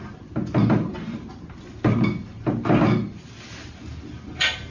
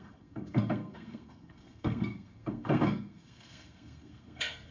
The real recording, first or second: first